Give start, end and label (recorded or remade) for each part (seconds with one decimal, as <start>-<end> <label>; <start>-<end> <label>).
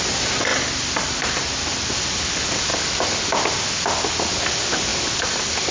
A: 0.0-5.7 recorded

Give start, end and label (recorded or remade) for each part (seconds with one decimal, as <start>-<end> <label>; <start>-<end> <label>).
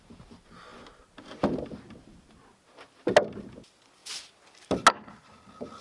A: 0.0-5.8 recorded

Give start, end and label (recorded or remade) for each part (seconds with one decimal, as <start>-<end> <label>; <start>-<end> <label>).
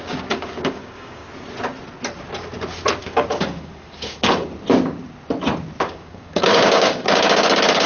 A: 0.0-1.2 remade; 1.2-3.0 recorded; 3.0-4.5 remade; 4.5-5.8 recorded; 5.8-7.9 remade